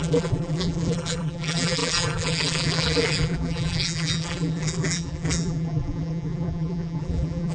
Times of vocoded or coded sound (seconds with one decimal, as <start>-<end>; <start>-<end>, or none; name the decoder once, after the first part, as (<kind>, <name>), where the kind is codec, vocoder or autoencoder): 0.0-7.5 (vocoder, BigVGAN v2)